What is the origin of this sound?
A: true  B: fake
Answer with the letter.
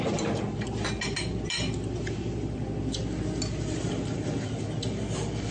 A